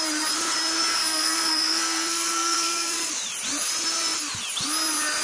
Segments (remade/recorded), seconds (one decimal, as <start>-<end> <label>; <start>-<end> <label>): 0.0-0.9 recorded; 0.9-3.1 remade; 3.1-5.2 recorded

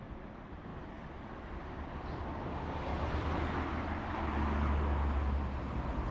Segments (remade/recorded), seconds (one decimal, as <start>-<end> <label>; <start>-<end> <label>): 0.0-6.1 recorded

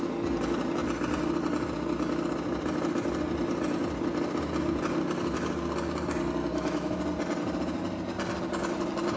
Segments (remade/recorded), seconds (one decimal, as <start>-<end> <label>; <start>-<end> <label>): 0.0-6.5 recorded; 6.5-7.0 remade; 7.0-9.2 recorded

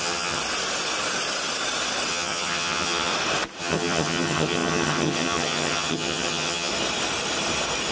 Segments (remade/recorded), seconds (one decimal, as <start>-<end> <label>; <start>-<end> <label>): 0.0-0.4 remade; 0.4-2.1 recorded; 2.1-3.1 remade; 3.1-3.6 recorded; 3.6-6.7 remade; 6.7-7.9 recorded